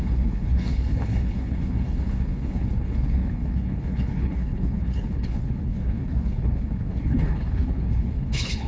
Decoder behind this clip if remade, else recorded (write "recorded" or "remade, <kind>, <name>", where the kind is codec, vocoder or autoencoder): remade, codec, HILCodec